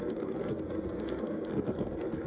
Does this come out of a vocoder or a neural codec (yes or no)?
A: yes